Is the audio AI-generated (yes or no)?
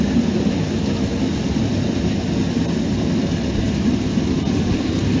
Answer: no